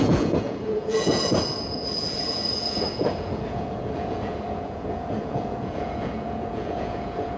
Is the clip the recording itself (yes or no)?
no